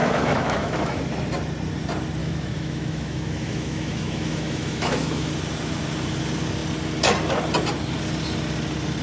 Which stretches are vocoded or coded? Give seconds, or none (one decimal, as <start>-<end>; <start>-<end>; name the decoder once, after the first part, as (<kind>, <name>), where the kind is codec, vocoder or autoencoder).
0.0-1.0 (autoencoder, DAC-VAE); 2.2-5.3